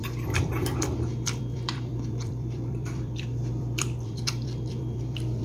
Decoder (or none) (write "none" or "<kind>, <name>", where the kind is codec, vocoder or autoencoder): vocoder, BigVGAN v2